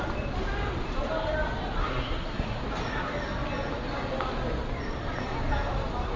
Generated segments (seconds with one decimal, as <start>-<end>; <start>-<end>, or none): 1.8-2.6